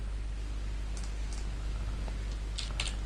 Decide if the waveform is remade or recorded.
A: recorded